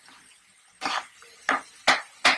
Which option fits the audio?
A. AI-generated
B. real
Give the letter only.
B